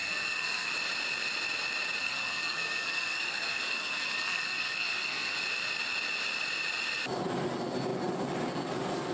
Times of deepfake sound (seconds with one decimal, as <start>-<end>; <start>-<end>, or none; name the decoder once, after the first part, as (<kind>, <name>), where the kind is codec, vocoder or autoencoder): 0.0-0.7 (codec, SNAC); 2.0-5.4